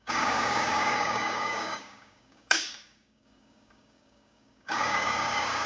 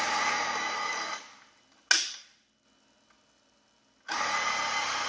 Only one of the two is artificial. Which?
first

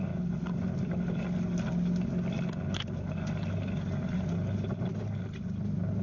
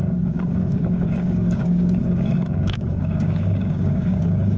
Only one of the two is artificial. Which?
second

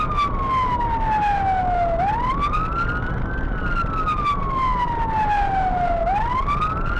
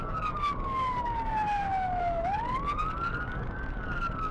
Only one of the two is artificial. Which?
second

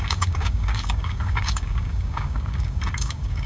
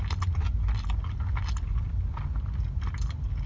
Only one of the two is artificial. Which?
first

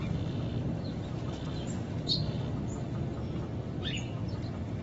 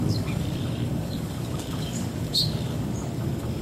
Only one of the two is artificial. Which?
second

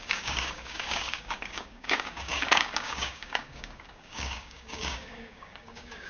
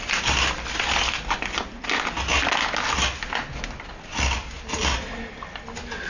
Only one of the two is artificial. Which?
first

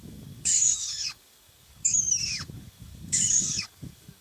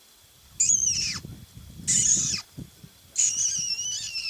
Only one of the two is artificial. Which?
first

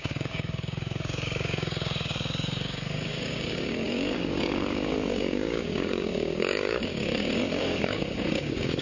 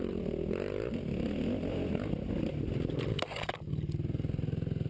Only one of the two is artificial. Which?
first